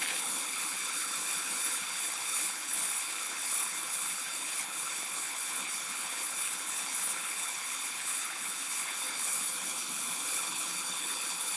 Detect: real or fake fake